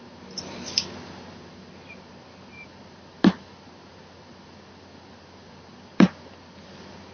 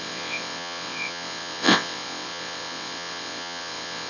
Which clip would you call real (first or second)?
first